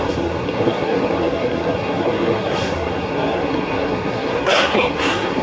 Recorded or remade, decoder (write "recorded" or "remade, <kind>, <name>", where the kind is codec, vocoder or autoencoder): remade, codec, SNAC